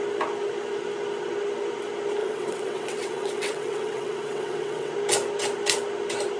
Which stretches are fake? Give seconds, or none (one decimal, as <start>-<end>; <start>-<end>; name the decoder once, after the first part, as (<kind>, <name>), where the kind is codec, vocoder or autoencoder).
2.2-4.9 (vocoder, WaveNeXt)